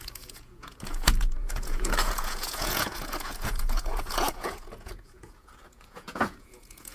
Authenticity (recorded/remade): remade